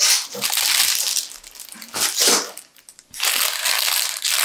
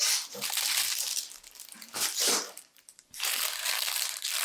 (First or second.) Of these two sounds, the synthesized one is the second